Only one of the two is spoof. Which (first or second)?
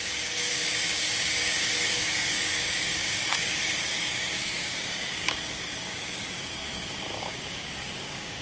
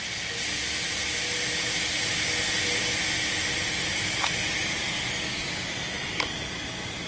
first